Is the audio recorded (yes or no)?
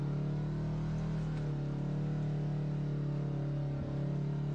yes